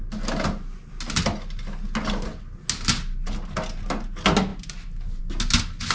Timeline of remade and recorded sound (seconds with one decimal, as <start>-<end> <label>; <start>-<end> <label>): 0.0-5.9 recorded